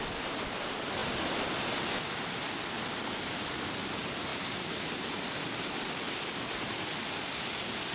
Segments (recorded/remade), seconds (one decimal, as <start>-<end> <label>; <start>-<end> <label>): 0.0-7.9 recorded